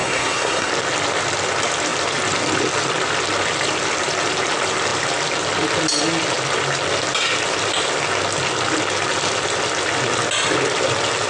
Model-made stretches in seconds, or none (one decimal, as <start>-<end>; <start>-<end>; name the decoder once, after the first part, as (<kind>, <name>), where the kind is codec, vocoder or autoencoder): 0.0-0.7 (codec, SNAC)